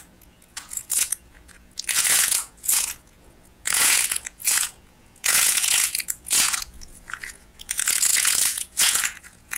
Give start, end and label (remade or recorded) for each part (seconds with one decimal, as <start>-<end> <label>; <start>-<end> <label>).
0.0-9.6 remade